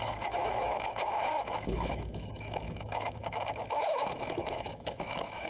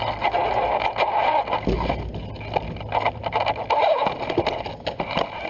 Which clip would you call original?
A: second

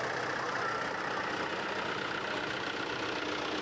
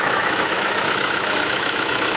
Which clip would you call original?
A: first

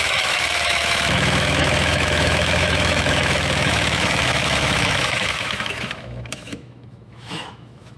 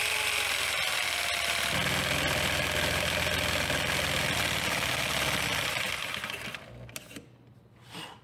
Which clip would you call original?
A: second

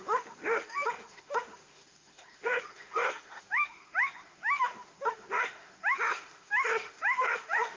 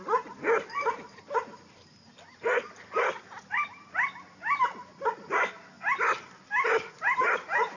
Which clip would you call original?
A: second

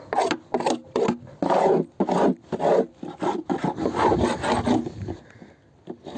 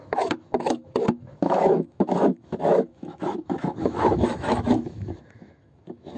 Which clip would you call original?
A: first